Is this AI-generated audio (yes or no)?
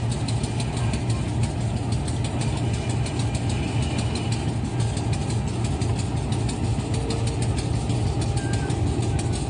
no